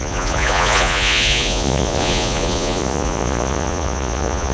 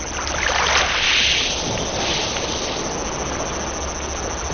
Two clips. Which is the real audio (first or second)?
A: second